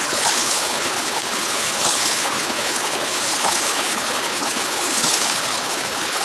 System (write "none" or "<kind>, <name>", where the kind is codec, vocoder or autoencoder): codec, HILCodec